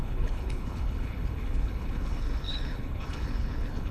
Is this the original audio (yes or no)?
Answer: no